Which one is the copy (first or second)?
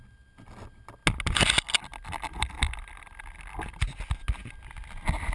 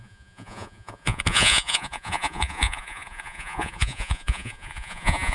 second